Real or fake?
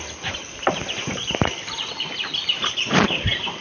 fake